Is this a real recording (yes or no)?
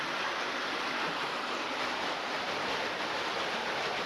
yes